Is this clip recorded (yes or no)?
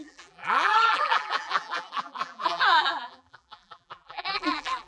no